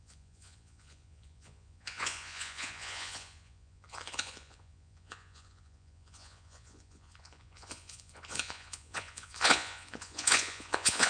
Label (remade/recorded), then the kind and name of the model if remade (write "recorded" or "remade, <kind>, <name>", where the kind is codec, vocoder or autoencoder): remade, vocoder, Vocos